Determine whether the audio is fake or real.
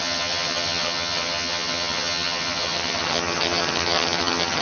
fake